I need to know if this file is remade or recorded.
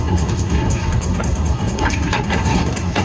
remade